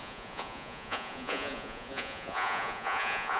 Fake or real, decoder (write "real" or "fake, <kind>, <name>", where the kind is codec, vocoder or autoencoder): fake, vocoder, Vocos